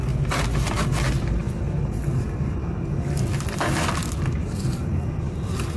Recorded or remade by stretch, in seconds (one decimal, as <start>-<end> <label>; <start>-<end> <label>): 0.0-5.8 recorded